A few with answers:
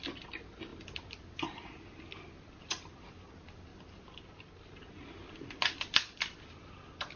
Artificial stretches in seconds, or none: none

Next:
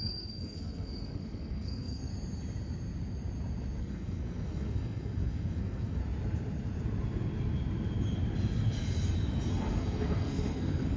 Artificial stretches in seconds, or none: 0.0-2.1 (codec, SNAC); 3.8-6.0; 9.5-11.0

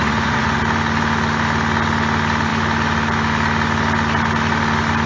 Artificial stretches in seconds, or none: 0.0-0.6 (vocoder, Vocos)

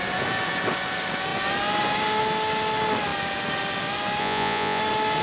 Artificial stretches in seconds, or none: 4.2-4.8 (vocoder, Vocos)

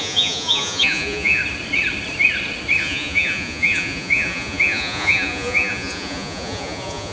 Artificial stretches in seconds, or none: 0.0-1.4 (vocoder, Vocos); 2.8-7.1

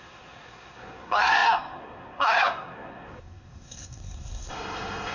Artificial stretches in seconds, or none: 0.0-5.1 (codec, SNAC)

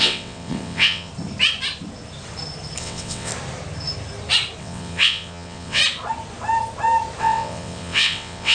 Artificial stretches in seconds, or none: 0.0-1.1 (vocoder, WaveNeXt); 2.8-3.3; 4.6-5.8; 7.2-8.5

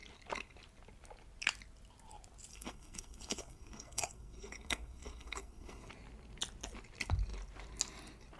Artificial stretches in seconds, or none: 2.5-5.9 (codec, SNAC)